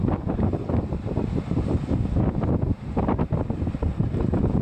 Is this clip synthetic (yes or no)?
no